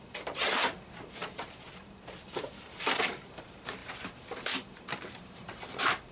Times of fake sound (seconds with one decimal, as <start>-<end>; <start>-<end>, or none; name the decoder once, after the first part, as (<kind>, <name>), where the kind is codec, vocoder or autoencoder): 0.0-6.1 (vocoder, BigVGAN v2)